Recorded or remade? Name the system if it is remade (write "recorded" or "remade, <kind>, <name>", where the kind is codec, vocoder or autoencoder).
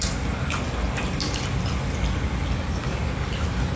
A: recorded